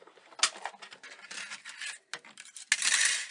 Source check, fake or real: real